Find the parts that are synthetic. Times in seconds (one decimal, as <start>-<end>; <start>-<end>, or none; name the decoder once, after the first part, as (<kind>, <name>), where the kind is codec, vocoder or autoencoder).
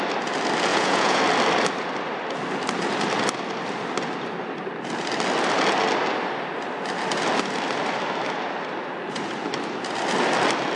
0.7-1.2 (vocoder, Vocos)